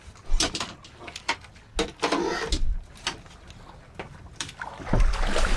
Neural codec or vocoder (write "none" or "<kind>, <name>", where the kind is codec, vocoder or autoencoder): none